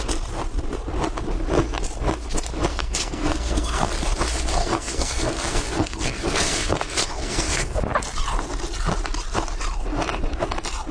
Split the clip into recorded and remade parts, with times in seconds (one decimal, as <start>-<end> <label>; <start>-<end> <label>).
0.0-2.7 recorded; 2.7-3.9 remade; 3.9-4.6 recorded; 4.6-7.8 remade; 7.8-10.9 recorded

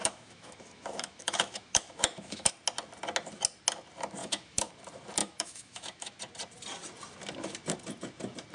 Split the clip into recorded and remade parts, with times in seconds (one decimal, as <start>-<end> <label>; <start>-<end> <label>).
0.0-2.5 remade; 2.5-4.2 recorded; 4.2-4.7 remade; 4.7-5.2 recorded; 5.2-6.2 remade; 6.2-8.5 recorded